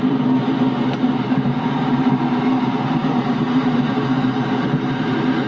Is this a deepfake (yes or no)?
yes